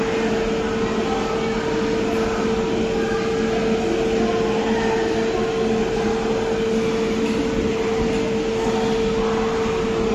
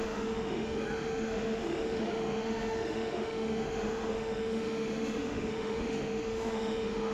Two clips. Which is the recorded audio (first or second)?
first